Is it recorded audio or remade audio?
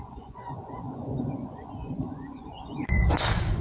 remade